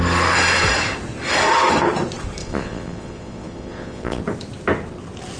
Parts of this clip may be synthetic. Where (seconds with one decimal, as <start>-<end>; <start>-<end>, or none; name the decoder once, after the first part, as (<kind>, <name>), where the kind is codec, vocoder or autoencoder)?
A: 2.4-4.2 (vocoder, Vocos)